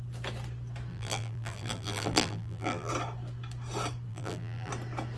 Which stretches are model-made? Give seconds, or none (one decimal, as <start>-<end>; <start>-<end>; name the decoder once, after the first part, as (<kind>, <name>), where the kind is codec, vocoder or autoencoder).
0.9-2.9 (vocoder, BigVGAN v2); 4.1-4.7

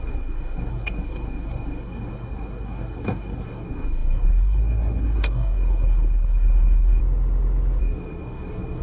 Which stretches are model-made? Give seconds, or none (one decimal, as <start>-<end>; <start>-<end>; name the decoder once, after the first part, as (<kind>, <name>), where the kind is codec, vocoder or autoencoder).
0.0-7.0 (codec, SNAC); 7.8-8.8

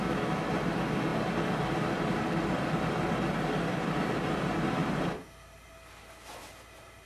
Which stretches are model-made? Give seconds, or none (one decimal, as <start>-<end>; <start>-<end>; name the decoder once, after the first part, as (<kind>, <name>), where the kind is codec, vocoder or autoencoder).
0.0-0.5 (autoencoder, DAC-VAE)

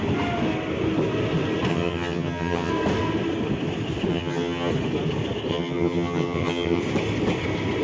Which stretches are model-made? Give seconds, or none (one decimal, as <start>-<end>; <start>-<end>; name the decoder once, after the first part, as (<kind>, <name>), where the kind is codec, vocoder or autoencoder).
1.7-2.7 (vocoder, HiFi-GAN); 4.1-4.7; 5.5-6.8